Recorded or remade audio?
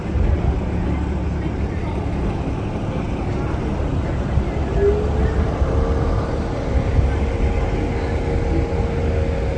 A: recorded